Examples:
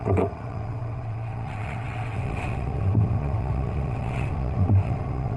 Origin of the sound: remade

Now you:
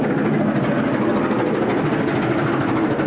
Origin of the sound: recorded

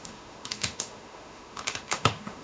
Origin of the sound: remade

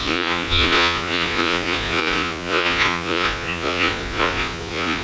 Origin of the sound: remade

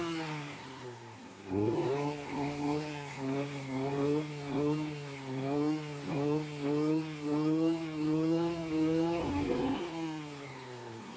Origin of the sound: remade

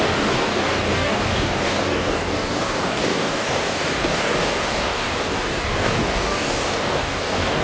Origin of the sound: remade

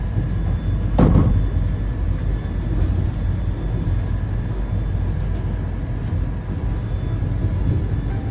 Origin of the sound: recorded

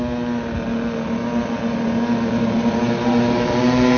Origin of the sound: recorded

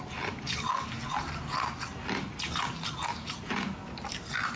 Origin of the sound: recorded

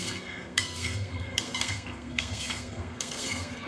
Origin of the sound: remade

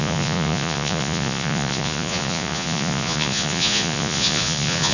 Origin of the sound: remade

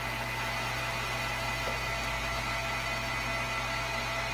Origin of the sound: recorded